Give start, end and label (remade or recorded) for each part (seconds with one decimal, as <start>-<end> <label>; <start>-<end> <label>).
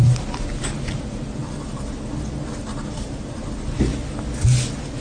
0.0-3.9 remade; 3.9-5.0 recorded